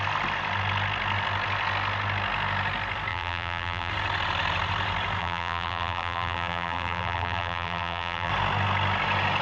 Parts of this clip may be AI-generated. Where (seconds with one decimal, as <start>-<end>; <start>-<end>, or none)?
3.1-3.9; 5.2-8.3